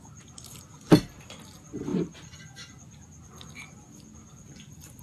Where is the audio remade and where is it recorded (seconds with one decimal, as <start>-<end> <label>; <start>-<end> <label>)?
0.0-5.0 recorded